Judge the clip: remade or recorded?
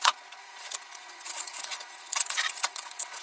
remade